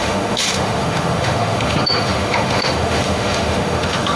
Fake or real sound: fake